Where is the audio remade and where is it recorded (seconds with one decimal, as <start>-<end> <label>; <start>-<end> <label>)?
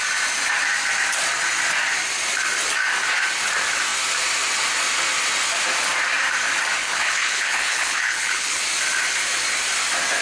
0.0-6.8 recorded; 6.8-8.6 remade; 8.6-10.2 recorded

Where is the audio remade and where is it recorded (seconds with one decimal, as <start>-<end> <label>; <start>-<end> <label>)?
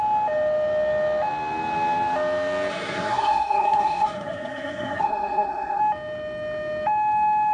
0.0-2.7 recorded; 2.7-5.8 remade; 5.8-7.5 recorded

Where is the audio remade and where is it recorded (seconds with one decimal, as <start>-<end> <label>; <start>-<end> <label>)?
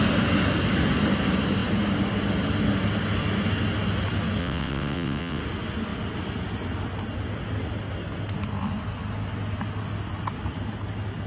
0.0-4.4 recorded; 4.4-5.4 remade; 5.4-11.3 recorded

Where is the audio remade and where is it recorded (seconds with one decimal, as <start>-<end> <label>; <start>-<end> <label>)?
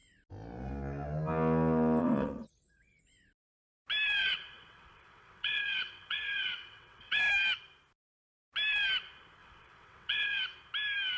0.0-2.0 recorded; 2.0-3.0 remade; 3.0-4.2 recorded; 4.2-7.2 remade; 7.2-9.4 recorded; 9.4-10.4 remade; 10.4-11.2 recorded